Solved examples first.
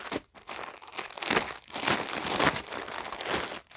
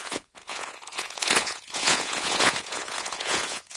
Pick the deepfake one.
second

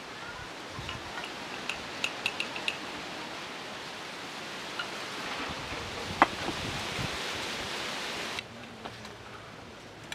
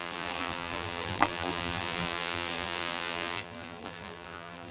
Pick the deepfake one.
second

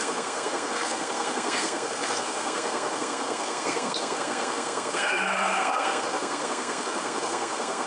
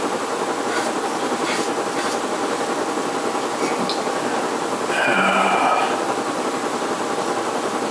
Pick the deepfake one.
first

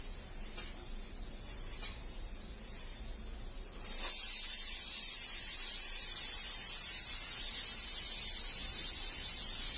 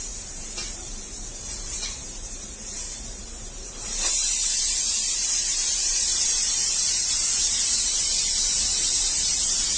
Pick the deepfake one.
second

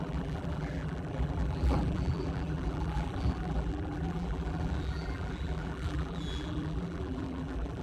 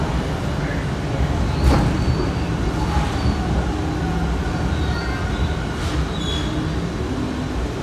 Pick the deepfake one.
first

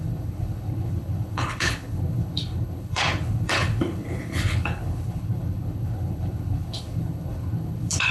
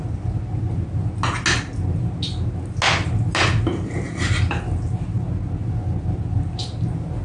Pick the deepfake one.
first